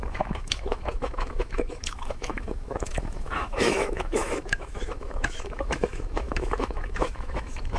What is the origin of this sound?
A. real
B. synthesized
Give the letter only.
B